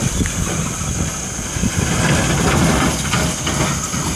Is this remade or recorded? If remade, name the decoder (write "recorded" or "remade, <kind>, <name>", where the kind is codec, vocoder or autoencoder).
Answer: recorded